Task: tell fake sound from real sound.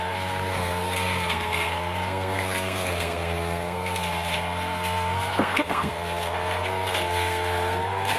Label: fake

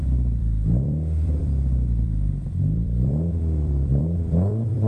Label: fake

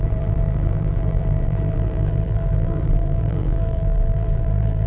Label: fake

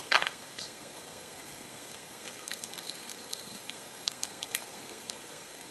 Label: fake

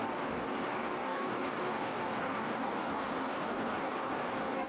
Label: fake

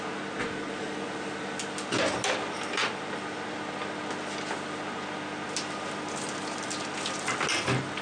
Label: real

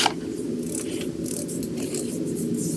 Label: real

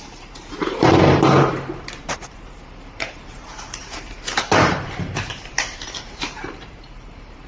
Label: fake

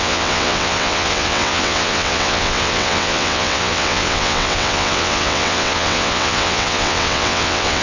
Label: fake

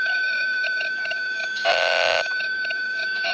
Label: fake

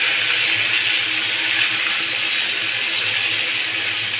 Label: real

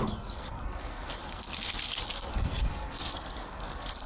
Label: fake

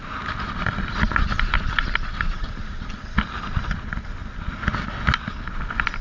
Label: real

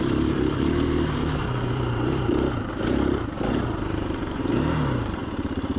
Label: fake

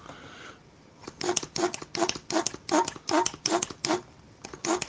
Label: real